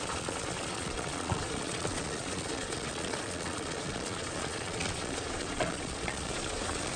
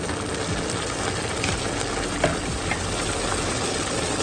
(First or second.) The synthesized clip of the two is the first